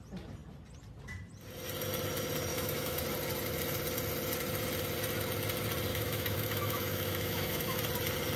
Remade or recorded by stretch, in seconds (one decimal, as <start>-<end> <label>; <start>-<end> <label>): 0.0-2.5 recorded; 2.5-3.0 remade; 3.0-5.9 recorded; 5.9-7.8 remade; 7.8-8.4 recorded